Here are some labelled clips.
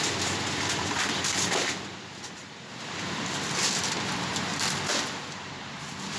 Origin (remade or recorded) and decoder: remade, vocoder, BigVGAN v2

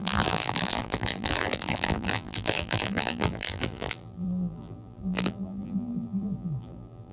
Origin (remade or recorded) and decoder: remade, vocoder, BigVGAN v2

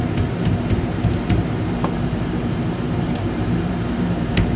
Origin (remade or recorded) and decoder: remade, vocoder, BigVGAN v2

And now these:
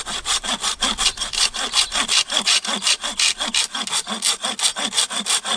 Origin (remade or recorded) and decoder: recorded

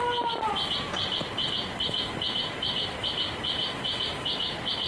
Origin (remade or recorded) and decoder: recorded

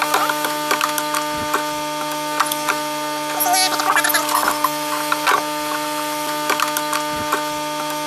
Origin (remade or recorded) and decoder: recorded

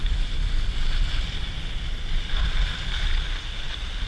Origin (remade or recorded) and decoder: recorded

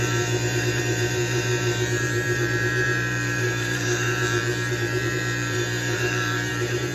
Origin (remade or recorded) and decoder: remade, vocoder, BigVGAN v2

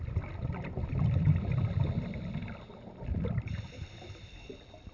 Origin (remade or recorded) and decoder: remade, vocoder, BigVGAN v2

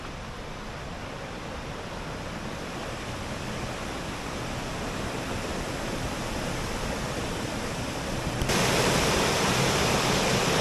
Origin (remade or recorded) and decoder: recorded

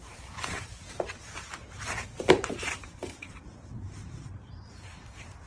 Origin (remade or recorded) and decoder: remade, vocoder, BigVGAN v2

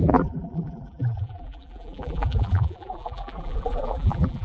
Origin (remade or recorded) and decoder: remade, vocoder, BigVGAN v2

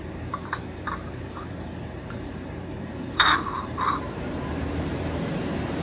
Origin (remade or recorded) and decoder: remade, vocoder, BigVGAN v2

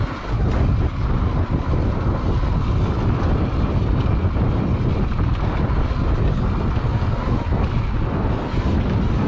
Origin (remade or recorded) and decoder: recorded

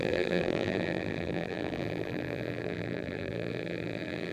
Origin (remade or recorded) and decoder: remade, vocoder, BigVGAN v2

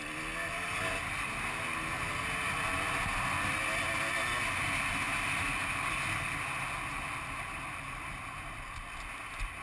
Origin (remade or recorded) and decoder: recorded